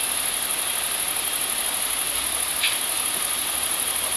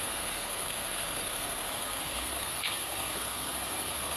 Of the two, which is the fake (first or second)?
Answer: second